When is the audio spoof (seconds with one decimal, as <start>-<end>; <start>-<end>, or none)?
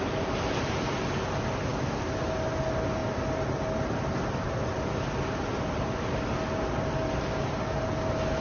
none